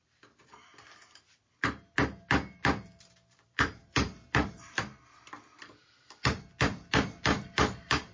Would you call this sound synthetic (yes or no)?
yes